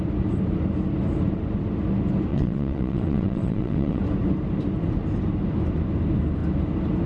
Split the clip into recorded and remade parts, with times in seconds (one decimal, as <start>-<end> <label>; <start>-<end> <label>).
0.0-2.3 recorded; 2.3-4.0 remade; 4.0-7.1 recorded